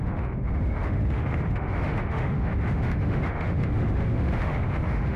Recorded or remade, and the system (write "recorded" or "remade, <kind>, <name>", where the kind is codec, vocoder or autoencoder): remade, autoencoder, DAC-VAE